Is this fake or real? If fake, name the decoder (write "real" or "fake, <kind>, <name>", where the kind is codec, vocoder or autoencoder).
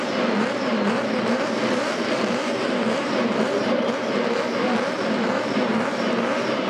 fake, vocoder, BigVGAN v2